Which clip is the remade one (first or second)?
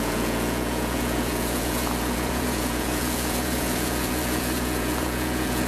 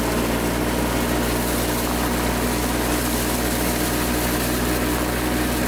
first